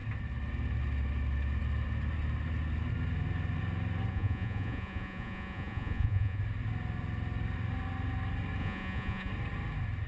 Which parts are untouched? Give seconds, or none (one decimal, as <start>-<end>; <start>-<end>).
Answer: 0.0-4.1; 6.4-8.6; 9.3-10.1